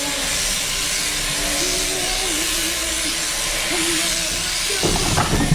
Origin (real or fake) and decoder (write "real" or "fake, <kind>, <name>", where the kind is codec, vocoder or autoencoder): real